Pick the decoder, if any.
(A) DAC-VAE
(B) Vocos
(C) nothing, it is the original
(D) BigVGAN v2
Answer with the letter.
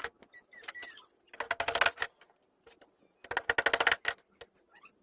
C